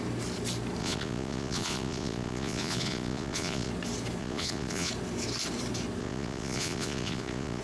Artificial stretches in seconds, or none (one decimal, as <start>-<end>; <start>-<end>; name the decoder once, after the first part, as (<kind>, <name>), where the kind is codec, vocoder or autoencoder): 0.8-3.7 (vocoder, Vocos); 4.2-4.9; 6.0-7.6